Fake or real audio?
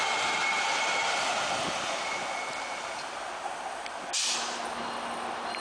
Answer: real